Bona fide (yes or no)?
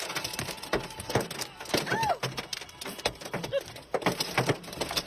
yes